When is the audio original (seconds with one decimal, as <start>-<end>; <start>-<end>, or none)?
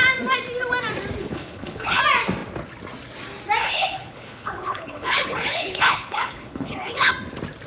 0.0-1.2; 2.0-3.6; 7.1-7.7